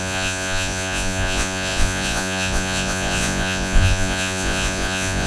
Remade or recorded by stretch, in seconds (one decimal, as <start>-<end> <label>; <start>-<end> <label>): 0.0-5.3 remade